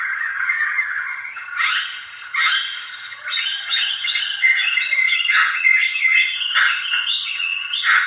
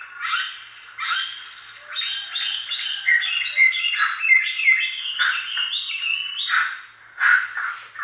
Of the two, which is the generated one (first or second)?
first